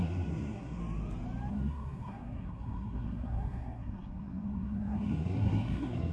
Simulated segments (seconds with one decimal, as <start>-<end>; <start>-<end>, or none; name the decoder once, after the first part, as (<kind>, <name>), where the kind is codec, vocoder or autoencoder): 0.0-0.8 (codec, SNAC); 1.5-6.1